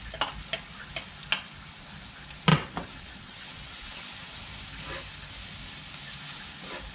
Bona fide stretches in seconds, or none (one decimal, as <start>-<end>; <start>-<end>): 0.0-2.5; 4.4-6.9